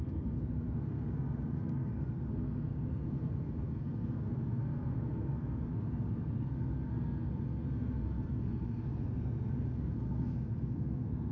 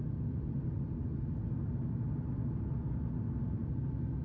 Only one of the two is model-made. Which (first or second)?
first